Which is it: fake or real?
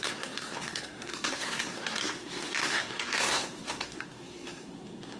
fake